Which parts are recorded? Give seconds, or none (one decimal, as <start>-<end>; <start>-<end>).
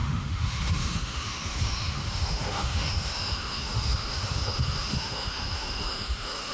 none